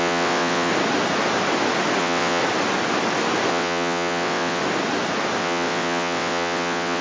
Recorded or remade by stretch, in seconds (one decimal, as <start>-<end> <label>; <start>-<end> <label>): 0.0-0.7 remade; 0.7-2.0 recorded; 2.0-2.4 remade; 2.4-3.5 recorded; 3.5-4.6 remade; 4.6-5.4 recorded; 5.4-7.0 remade